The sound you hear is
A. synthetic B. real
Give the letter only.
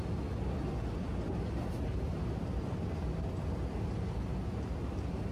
B